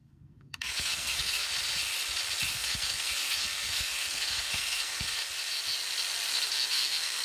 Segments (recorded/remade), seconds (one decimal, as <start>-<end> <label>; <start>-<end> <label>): 0.0-1.5 remade; 1.5-2.5 recorded; 2.5-5.2 remade; 5.2-6.3 recorded; 6.3-7.2 remade